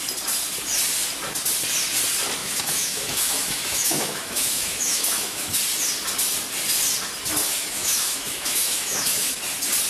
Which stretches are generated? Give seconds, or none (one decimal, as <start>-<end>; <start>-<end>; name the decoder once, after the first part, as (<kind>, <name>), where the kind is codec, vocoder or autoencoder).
2.4-5.6 (autoencoder, DAC-VAE); 7.5-9.4